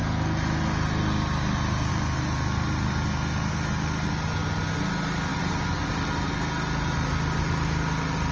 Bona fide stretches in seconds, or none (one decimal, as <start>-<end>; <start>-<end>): 0.0-8.3

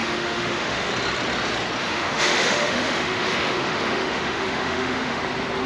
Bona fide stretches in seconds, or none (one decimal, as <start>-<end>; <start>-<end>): 0.9-1.8; 5.2-5.7

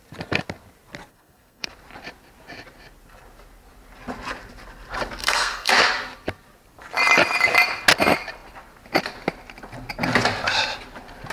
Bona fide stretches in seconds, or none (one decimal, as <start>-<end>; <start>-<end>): 0.0-1.1; 1.7-5.2; 5.7-11.3

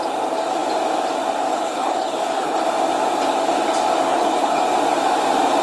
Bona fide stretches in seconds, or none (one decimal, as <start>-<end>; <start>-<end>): 0.0-1.5; 2.6-4.1; 4.6-5.6

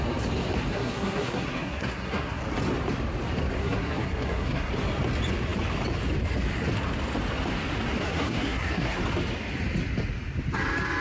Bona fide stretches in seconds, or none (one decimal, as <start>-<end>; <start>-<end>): 0.0-0.7; 2.4-3.6; 4.7-8.0; 9.0-11.0

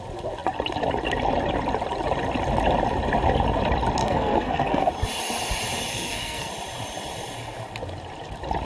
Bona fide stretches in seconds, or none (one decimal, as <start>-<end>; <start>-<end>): 0.0-4.0; 4.9-5.9; 6.5-8.6

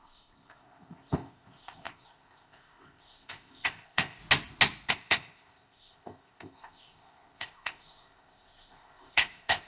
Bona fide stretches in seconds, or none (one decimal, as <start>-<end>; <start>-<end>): 4.2-4.9